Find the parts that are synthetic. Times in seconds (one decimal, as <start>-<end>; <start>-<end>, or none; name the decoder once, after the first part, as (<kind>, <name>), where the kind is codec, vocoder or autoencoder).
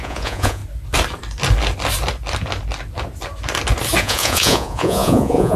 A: 0.0-0.6 (vocoder, Vocos); 4.0-5.6